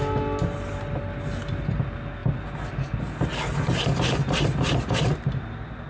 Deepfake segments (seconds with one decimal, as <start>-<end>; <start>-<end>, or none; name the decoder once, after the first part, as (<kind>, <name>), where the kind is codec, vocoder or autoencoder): none